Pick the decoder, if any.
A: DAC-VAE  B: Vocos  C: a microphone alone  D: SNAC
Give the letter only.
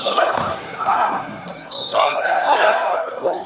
D